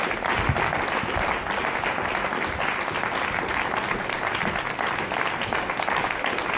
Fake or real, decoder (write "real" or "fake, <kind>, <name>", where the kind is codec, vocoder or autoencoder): real